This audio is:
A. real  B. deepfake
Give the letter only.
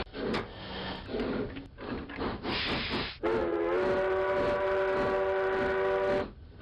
A